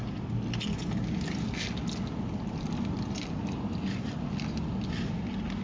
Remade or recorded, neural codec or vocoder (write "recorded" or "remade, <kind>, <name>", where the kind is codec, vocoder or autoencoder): recorded